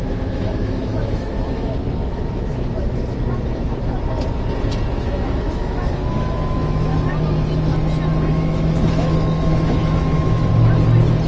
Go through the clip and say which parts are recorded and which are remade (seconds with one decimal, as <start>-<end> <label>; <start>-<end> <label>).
0.0-3.1 remade; 3.1-4.9 recorded; 4.9-6.9 remade; 6.9-8.3 recorded; 8.3-10.5 remade; 10.5-11.3 recorded